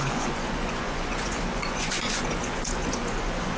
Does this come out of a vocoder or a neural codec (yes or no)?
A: yes